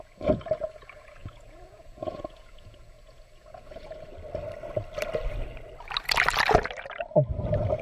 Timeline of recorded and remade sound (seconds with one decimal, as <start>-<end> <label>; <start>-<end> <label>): 0.0-4.1 remade; 4.1-7.8 recorded